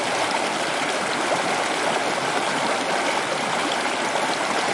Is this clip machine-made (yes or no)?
no